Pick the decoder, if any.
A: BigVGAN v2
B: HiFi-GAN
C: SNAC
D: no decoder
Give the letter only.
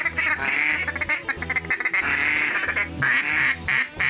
D